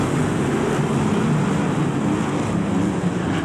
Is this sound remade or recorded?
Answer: recorded